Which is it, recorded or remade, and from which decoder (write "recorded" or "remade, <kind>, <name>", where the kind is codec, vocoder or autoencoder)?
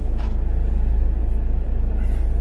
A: recorded